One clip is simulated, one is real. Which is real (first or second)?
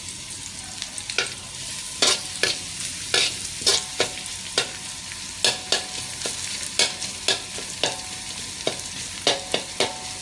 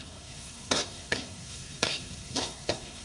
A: first